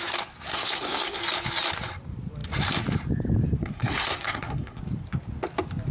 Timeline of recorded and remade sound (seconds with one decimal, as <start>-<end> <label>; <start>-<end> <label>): 0.0-0.5 recorded; 0.5-1.2 remade; 1.2-3.6 recorded; 3.6-4.8 remade; 4.8-5.9 recorded